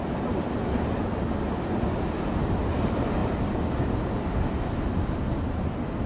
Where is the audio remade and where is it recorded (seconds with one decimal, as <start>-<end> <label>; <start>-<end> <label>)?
0.0-6.1 recorded